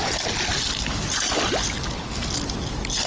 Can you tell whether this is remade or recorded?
recorded